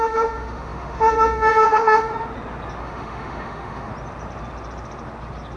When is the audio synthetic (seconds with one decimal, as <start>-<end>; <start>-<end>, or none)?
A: 0.0-2.1; 2.8-3.9